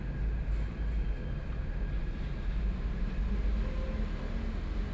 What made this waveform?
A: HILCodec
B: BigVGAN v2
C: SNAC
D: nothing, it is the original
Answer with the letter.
D